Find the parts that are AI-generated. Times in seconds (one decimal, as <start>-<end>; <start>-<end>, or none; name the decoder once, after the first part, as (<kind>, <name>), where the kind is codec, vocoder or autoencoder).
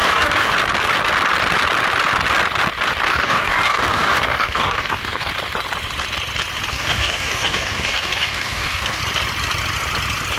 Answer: 0.0-0.5 (codec, DAC); 3.1-5.3; 6.7-9.0